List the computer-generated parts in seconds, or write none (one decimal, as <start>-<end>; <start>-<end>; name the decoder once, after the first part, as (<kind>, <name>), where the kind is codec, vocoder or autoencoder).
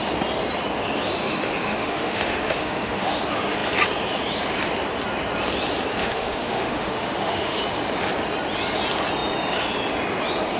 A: 1.2-3.2 (autoencoder, DAC-VAE); 6.0-7.6